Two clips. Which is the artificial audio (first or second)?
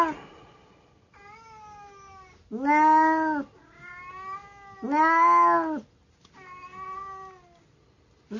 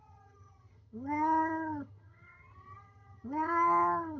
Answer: second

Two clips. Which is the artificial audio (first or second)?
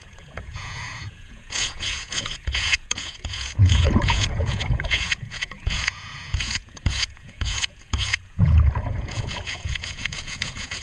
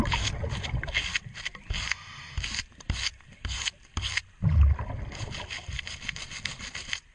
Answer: first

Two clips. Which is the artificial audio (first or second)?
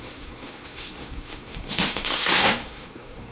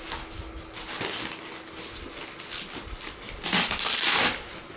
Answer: first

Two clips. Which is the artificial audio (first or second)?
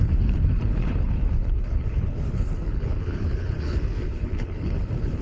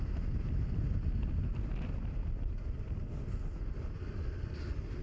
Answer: first